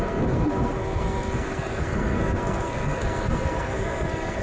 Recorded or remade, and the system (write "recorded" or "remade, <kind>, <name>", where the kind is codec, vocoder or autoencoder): remade, codec, SNAC